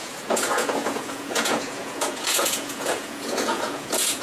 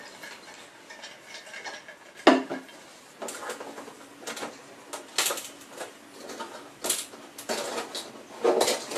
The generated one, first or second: first